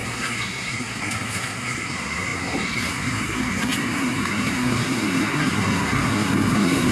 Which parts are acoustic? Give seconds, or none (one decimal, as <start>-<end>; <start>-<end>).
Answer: none